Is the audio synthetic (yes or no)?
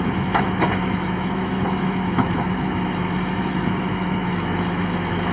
yes